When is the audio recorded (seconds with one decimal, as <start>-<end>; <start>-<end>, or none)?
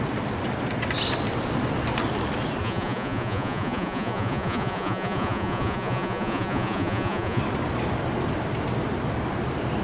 0.0-2.6; 7.4-9.8